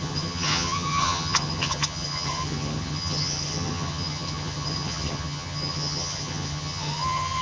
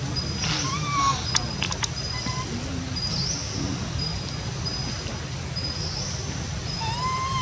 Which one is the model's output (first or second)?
first